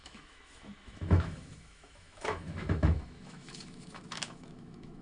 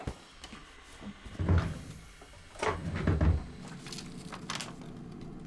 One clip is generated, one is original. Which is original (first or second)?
second